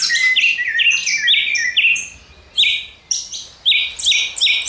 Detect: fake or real real